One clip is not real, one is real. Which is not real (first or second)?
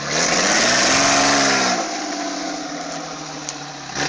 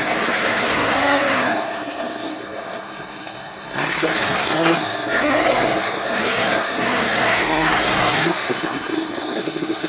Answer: second